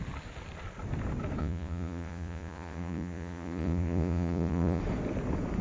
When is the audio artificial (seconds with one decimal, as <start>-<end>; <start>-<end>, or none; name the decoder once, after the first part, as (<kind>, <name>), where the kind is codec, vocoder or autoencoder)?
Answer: 1.4-4.8 (vocoder, Vocos)